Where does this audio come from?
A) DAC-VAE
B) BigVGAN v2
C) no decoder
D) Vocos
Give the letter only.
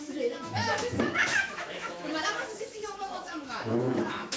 A